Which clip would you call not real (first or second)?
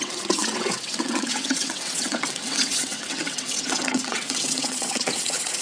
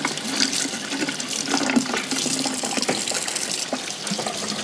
first